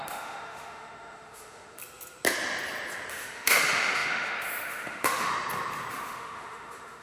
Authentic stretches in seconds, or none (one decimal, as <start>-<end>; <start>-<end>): 1.8-3.1; 5.3-5.9